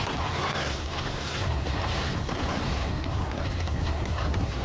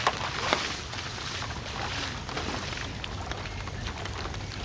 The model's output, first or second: first